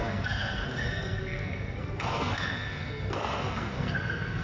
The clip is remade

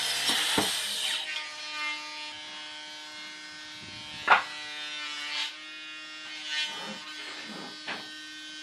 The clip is recorded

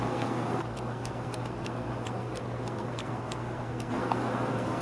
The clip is remade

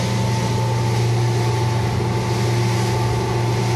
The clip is recorded